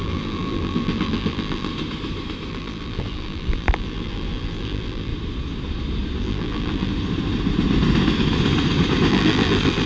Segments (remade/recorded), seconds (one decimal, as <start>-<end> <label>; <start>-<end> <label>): 0.0-1.7 remade; 1.7-2.5 recorded; 2.5-5.1 remade; 5.1-6.2 recorded; 6.2-6.9 remade; 6.9-9.1 recorded; 9.1-9.9 remade